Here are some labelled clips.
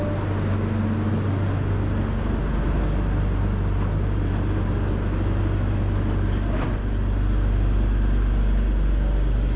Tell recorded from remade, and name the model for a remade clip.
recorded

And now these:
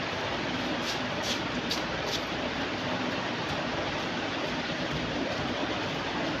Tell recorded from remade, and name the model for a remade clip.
remade, vocoder, BigVGAN v2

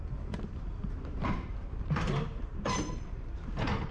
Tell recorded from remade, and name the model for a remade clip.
remade, vocoder, BigVGAN v2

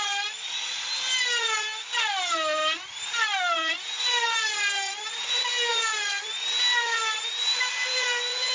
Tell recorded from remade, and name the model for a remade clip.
recorded